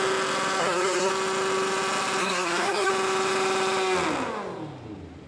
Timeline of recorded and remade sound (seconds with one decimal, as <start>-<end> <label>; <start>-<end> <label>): 0.0-0.6 recorded; 0.6-1.1 remade; 1.1-2.2 recorded; 2.2-2.9 remade; 2.9-5.3 recorded